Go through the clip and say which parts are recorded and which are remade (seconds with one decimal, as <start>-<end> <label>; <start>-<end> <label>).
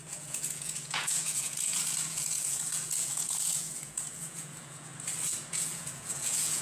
0.0-4.9 remade; 4.9-5.5 recorded; 5.5-6.6 remade